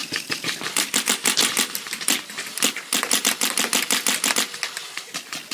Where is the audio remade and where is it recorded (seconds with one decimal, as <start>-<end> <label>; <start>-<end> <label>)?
0.0-3.3 remade; 3.3-5.5 recorded